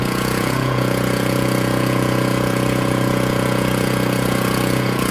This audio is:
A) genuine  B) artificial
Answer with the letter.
B